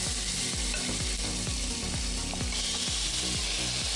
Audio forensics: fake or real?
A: real